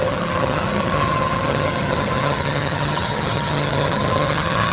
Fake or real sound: fake